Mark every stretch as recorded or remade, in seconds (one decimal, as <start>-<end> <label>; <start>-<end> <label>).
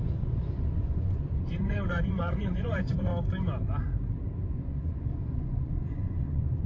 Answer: 0.0-3.1 remade; 3.1-4.5 recorded; 4.5-6.7 remade